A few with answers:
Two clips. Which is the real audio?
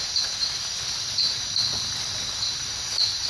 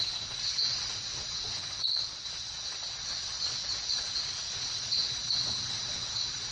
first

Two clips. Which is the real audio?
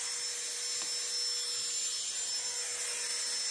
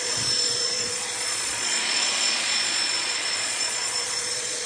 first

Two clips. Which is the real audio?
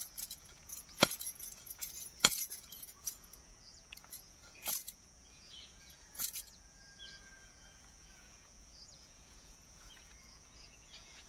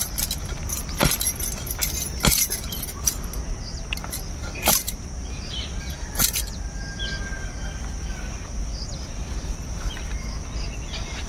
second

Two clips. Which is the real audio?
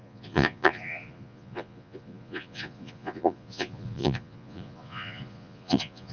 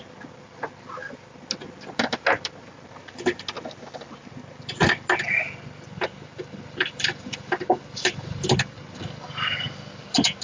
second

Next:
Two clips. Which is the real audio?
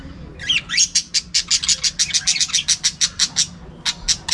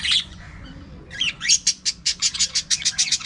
first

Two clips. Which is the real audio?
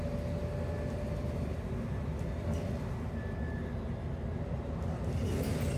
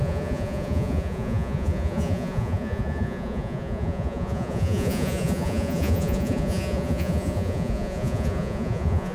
first